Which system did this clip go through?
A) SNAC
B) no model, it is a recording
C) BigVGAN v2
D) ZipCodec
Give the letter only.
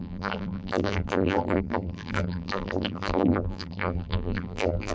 C